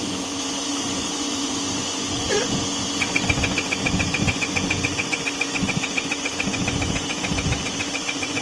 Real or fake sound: fake